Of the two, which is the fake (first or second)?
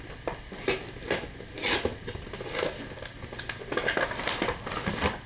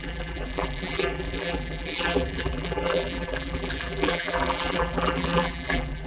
second